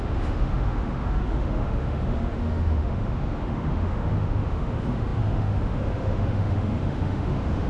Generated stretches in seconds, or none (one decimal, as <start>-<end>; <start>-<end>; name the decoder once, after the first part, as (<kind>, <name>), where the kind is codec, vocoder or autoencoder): 0.0-7.7 (autoencoder, DAC-VAE)